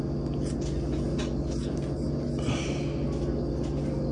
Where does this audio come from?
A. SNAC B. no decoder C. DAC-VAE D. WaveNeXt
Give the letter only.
B